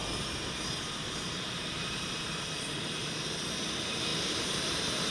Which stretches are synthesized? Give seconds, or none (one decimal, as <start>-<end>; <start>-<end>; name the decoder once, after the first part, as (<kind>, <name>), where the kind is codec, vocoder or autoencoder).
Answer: 0.0-3.1 (vocoder, BigVGAN v2); 4.1-5.1